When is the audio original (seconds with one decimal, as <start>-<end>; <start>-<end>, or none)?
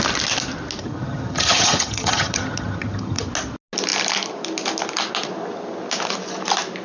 0.0-0.8; 3.3-6.8